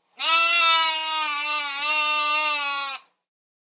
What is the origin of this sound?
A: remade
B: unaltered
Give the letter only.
A